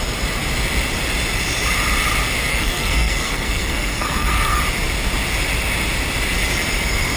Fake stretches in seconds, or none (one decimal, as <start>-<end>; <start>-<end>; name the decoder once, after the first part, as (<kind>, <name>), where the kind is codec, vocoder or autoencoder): 2.5-4.6 (codec, SNAC)